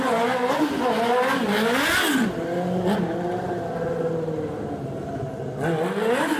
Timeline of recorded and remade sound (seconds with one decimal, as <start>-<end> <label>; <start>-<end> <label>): 0.0-6.4 recorded